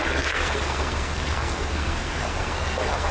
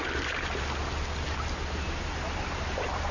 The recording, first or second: second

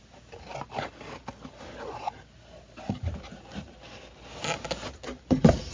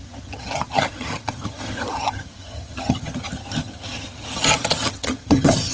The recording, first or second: first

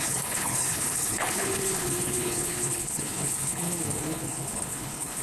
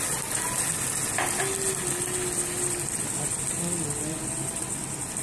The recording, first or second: second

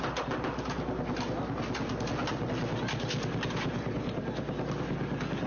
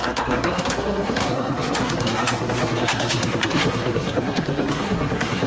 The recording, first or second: first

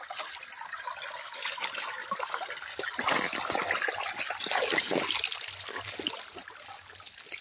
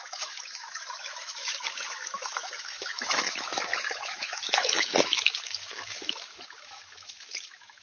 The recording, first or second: first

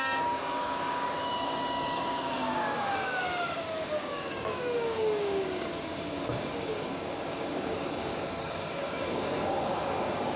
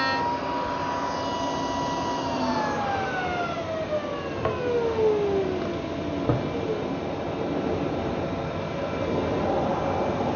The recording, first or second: second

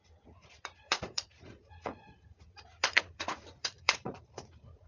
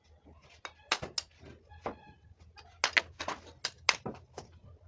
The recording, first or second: second